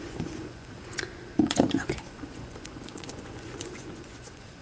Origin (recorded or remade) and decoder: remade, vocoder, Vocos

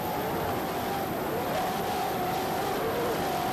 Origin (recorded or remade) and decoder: remade, vocoder, BigVGAN v2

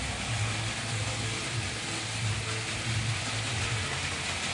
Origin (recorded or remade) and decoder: recorded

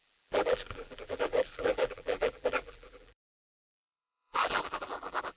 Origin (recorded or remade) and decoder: remade, vocoder, BigVGAN v2